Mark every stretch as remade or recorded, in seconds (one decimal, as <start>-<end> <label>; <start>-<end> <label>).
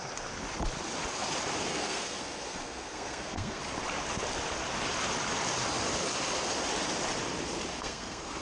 0.0-1.7 recorded; 1.7-3.6 remade; 3.6-7.7 recorded; 7.7-8.4 remade